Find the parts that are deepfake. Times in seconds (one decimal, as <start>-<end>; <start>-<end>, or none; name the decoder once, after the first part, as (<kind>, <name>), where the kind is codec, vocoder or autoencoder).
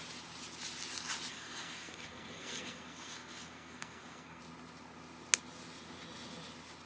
1.3-4.4 (codec, SNAC)